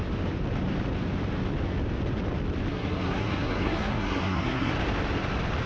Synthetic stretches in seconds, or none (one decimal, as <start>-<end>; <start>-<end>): 2.7-4.7